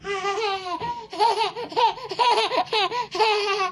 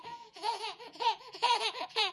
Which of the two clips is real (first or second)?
first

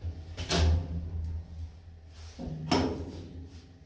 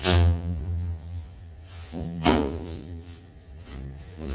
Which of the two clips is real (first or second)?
first